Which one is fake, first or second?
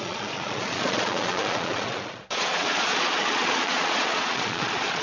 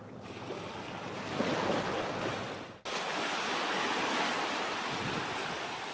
first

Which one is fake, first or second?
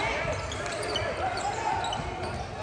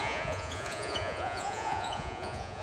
second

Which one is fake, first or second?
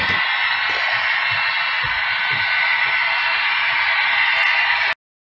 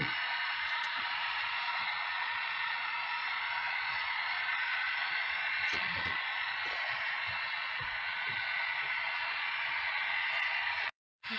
second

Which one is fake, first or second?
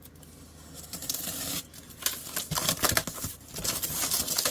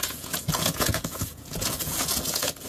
second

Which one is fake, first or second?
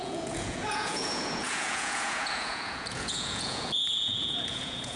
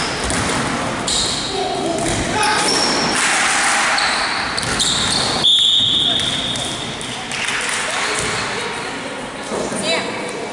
first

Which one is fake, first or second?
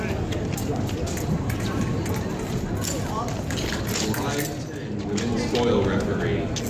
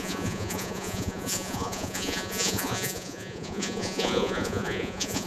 second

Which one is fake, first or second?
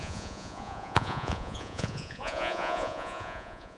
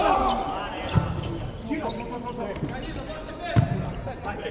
first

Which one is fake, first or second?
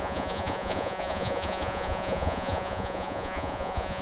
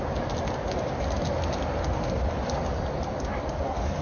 first